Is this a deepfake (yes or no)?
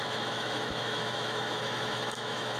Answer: yes